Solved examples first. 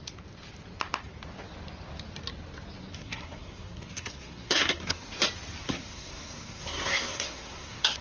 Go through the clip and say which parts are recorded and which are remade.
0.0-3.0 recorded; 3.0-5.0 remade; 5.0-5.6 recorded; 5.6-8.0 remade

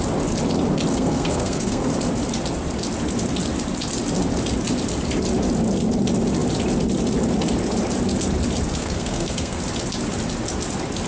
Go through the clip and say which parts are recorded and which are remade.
0.0-0.9 recorded; 0.9-1.9 remade; 1.9-8.8 recorded; 8.8-9.6 remade; 9.6-11.1 recorded

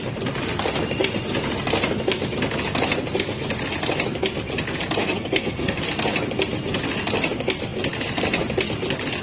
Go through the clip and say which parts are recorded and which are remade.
0.0-5.0 recorded; 5.0-5.8 remade; 5.8-9.2 recorded

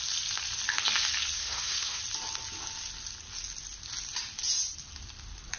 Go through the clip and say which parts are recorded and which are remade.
0.0-1.4 recorded; 1.4-2.0 remade; 2.0-5.6 recorded

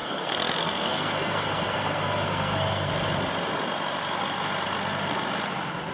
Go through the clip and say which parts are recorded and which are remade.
0.0-2.9 remade; 2.9-5.9 recorded

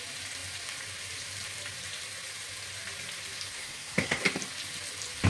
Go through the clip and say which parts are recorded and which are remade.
0.0-3.5 recorded; 3.5-4.2 remade; 4.2-5.3 recorded